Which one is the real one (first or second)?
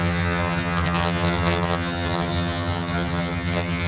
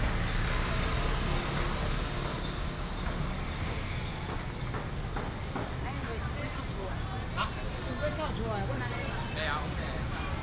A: second